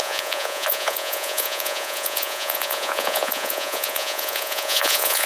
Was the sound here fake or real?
fake